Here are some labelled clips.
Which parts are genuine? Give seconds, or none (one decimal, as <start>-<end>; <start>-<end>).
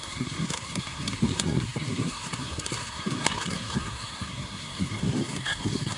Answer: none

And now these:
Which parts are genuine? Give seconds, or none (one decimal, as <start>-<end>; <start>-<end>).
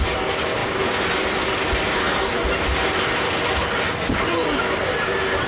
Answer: 0.0-5.5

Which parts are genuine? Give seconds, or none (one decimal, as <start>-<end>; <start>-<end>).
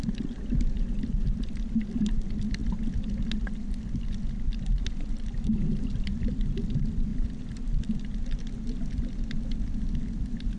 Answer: 0.0-10.6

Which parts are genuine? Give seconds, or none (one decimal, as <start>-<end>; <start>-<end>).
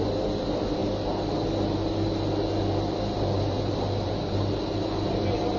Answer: 0.0-5.6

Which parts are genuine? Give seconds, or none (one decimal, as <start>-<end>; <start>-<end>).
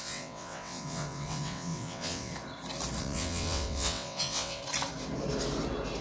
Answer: 2.3-3.0; 4.6-6.0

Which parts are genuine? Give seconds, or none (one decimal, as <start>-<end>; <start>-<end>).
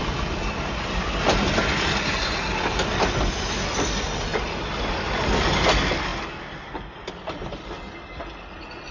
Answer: 0.0-4.3; 5.3-8.9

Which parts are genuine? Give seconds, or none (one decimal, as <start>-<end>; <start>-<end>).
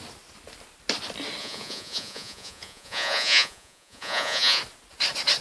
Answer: 0.0-1.4; 4.6-5.4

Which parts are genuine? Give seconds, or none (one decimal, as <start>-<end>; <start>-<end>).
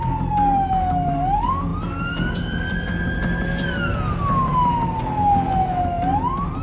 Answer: 0.0-6.6